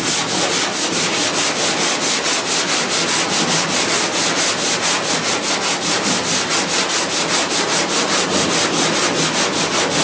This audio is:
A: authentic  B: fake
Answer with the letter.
A